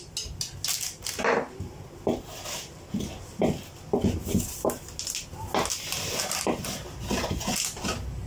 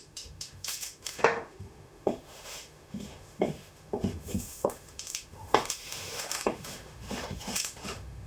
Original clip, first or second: first